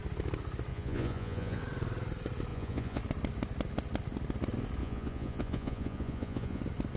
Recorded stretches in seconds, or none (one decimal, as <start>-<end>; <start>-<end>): 0.0-0.7; 1.6-2.5; 3.0-4.8; 6.6-7.0